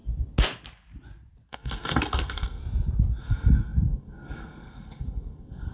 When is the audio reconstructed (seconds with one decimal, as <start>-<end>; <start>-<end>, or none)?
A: 1.5-2.6; 3.2-5.7